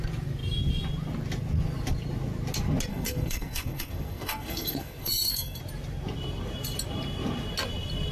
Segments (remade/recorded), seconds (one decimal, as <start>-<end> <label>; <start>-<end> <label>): 0.0-2.9 recorded; 2.9-5.6 remade; 5.6-8.1 recorded